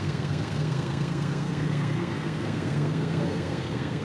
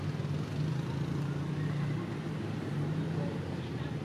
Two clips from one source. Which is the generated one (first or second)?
first